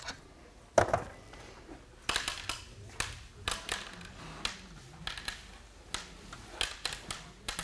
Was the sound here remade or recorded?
recorded